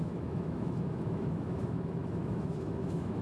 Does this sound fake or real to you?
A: fake